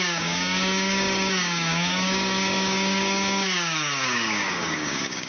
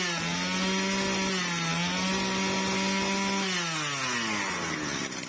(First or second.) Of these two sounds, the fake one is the first